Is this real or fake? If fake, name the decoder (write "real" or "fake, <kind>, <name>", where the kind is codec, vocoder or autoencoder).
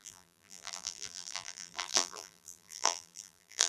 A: fake, vocoder, BigVGAN v2